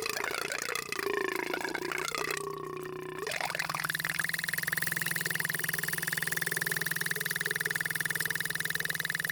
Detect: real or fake real